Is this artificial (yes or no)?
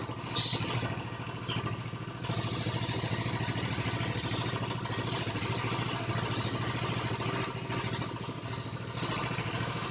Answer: no